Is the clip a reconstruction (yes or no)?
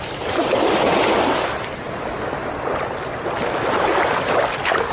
no